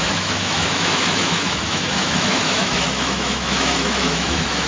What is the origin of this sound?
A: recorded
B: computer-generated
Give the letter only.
B